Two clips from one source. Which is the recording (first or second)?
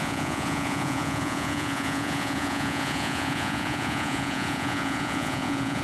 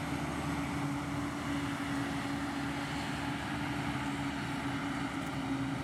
second